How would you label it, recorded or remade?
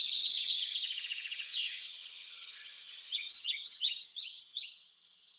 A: remade